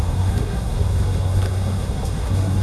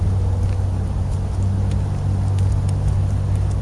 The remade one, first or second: first